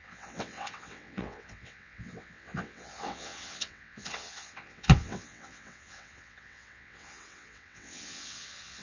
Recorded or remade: remade